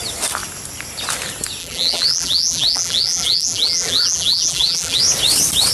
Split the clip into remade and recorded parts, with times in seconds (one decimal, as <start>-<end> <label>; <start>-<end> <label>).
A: 0.0-1.6 recorded; 1.6-5.0 remade; 5.0-5.7 recorded